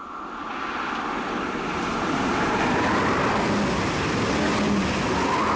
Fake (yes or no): no